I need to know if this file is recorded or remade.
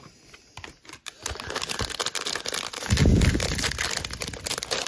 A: recorded